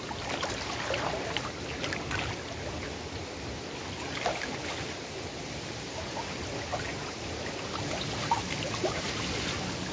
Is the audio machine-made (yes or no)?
no